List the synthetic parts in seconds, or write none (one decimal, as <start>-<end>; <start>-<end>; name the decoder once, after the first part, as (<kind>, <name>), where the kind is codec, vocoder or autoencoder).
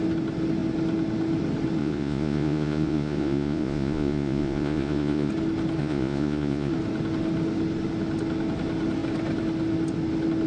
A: 1.8-5.3 (vocoder, Vocos); 5.8-6.7